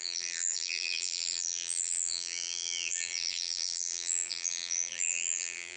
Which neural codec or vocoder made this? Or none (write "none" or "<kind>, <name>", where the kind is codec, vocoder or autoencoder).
vocoder, BigVGAN v2